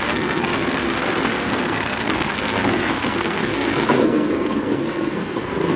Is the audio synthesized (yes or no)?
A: yes